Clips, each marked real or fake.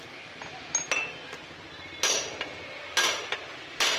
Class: real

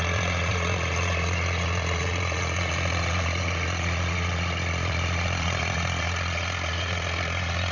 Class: fake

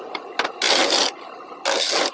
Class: real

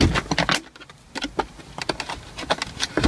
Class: real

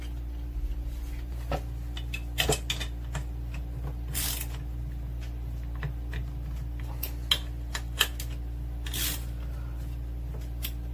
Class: real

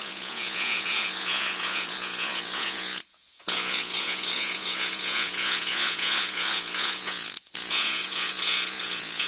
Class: fake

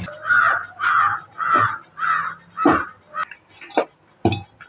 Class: real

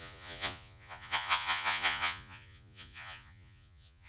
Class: fake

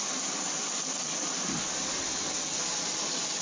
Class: real